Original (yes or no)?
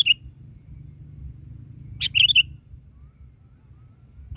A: yes